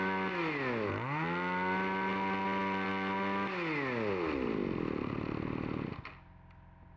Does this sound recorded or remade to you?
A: recorded